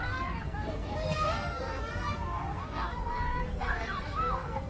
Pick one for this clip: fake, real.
fake